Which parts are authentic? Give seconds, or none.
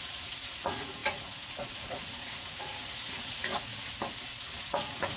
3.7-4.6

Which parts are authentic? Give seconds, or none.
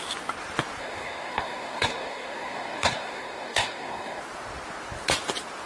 0.0-0.8; 4.2-5.7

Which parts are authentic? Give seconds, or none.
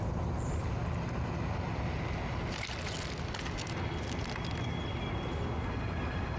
0.0-6.4